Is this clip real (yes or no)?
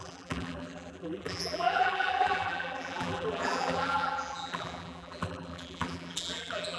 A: no